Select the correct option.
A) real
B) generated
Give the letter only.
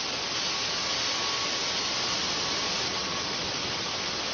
A